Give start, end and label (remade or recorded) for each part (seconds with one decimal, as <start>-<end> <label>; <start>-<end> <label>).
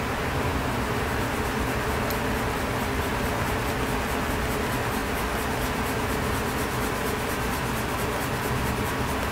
0.0-3.1 recorded; 3.1-3.6 remade; 3.6-9.3 recorded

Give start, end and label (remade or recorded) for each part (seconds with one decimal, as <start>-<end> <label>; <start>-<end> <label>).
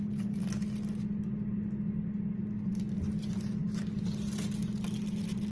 0.0-5.5 recorded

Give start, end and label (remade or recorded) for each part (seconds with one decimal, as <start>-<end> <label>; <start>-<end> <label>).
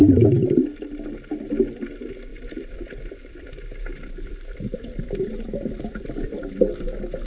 0.0-2.3 recorded; 2.3-6.5 remade; 6.5-7.3 recorded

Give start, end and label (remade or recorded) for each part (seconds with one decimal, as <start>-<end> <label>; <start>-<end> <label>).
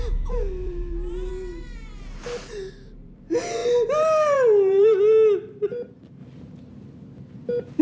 0.0-0.6 recorded; 0.6-1.3 remade; 1.3-3.6 recorded; 3.6-4.9 remade; 4.9-7.8 recorded